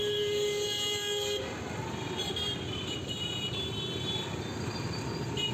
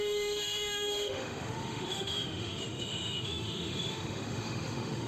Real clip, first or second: first